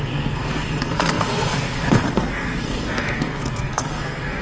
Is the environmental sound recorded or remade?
remade